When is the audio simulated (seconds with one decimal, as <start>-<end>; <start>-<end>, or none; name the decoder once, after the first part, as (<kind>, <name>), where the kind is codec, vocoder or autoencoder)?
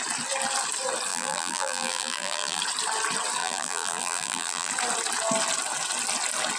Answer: 1.1-2.6 (vocoder, BigVGAN v2); 3.4-4.7